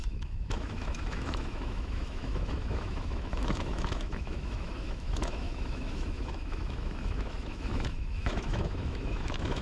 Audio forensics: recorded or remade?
remade